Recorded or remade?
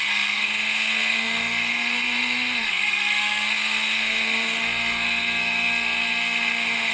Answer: remade